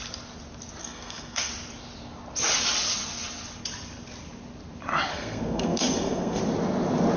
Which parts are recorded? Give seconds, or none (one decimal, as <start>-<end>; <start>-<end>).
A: 0.0-0.8; 1.5-5.1; 6.4-7.2